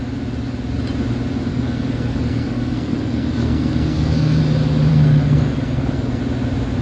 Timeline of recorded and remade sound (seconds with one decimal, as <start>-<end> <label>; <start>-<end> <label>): 0.0-1.5 recorded; 1.5-4.4 remade; 4.4-4.9 recorded; 4.9-6.2 remade; 6.2-6.8 recorded